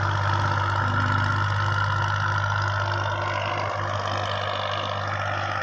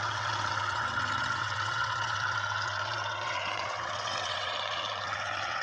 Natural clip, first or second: first